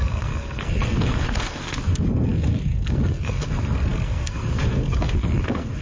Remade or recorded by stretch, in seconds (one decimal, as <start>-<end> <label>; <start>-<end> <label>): 0.0-5.8 remade